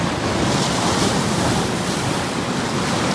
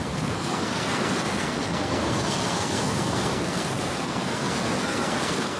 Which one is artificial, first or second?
second